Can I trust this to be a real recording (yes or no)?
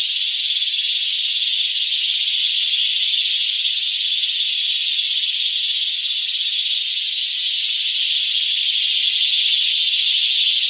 yes